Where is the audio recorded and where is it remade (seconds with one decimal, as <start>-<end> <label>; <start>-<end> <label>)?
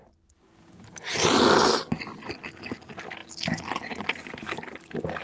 0.0-5.2 recorded